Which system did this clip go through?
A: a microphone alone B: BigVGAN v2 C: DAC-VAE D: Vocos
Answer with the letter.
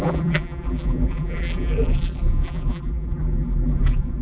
B